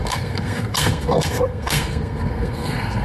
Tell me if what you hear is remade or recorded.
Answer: remade